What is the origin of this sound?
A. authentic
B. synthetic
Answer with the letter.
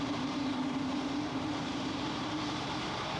B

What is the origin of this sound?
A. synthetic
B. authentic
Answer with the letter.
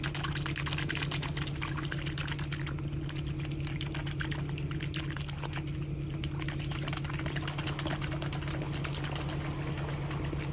B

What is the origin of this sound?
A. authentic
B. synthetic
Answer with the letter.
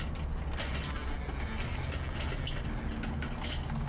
A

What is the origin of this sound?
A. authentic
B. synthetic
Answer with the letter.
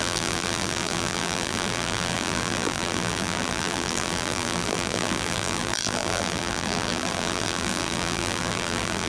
B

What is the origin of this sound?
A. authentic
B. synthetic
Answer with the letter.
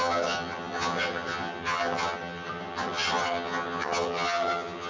B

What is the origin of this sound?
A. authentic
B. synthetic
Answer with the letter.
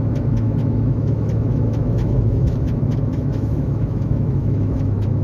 B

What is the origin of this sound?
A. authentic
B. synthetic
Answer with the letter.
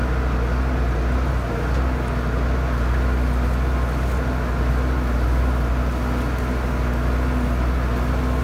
A